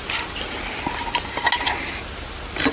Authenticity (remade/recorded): recorded